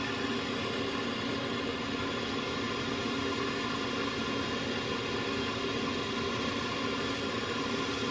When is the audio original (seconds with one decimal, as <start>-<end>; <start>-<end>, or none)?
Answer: 0.0-8.1